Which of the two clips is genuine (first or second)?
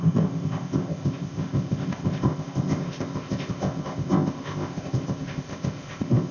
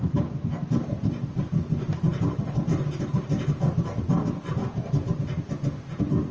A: second